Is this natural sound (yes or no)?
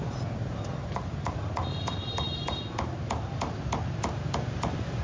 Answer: yes